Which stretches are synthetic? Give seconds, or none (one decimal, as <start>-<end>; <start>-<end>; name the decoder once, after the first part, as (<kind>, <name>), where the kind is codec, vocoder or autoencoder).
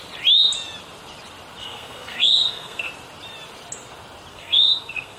1.6-2.9 (codec, SNAC); 4.3-5.2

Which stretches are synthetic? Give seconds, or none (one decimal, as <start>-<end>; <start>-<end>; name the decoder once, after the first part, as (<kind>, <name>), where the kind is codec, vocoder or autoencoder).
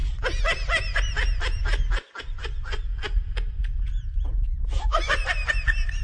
2.2-2.9 (vocoder, Vocos); 4.6-5.2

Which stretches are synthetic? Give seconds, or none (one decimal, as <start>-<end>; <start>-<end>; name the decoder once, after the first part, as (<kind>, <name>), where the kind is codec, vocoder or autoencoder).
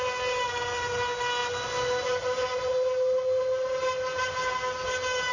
none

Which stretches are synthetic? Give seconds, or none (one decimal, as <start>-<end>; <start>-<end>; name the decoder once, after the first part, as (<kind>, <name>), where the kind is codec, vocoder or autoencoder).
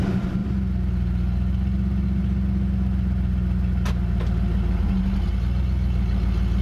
none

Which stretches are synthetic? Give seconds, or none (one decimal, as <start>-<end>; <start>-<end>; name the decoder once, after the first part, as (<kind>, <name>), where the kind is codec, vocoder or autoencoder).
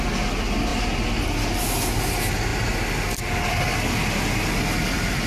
none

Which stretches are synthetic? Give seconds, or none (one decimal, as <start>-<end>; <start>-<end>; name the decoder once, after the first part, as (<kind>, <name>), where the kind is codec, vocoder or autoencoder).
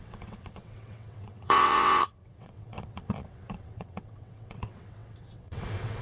0.0-6.0 (vocoder, WaveNeXt)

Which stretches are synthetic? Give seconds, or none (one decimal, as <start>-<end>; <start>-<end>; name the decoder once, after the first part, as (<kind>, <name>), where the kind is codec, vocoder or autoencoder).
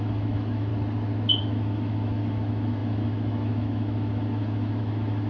0.0-0.7 (autoencoder, DAC-VAE); 1.4-5.3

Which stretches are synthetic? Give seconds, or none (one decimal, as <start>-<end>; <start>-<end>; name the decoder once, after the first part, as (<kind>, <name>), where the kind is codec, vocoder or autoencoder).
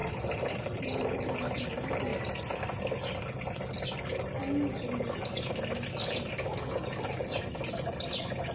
0.0-0.8 (vocoder, BigVGAN v2)